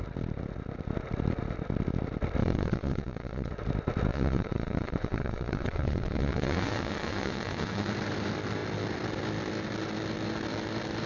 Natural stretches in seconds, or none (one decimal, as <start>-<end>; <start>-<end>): 0.0-2.4; 3.5-4.1; 7.9-11.1